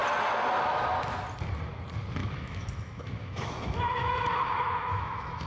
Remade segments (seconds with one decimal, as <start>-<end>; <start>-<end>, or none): 2.2-5.5